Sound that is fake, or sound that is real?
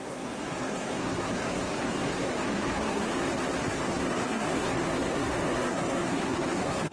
fake